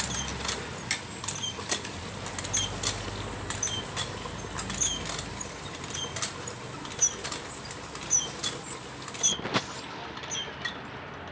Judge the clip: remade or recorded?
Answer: recorded